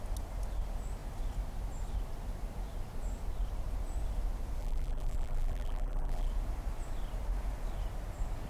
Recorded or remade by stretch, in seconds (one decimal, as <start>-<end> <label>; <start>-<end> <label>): 0.0-4.6 recorded; 4.6-6.3 remade; 6.3-8.5 recorded